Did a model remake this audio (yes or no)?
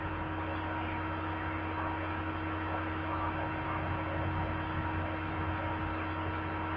no